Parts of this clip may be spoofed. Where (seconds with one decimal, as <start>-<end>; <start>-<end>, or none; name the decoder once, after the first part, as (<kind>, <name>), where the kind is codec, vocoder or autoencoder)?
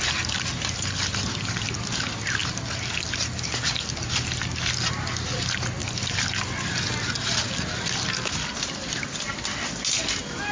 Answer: none